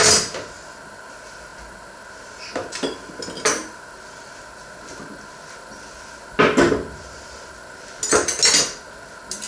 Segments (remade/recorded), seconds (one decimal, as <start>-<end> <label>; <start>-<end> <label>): 0.0-9.5 recorded